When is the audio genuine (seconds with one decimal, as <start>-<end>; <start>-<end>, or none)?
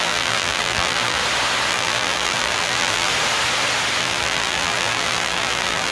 1.2-1.7; 3.1-4.0